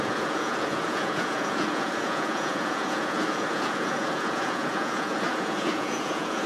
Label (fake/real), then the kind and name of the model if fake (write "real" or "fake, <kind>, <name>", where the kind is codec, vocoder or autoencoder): fake, vocoder, Vocos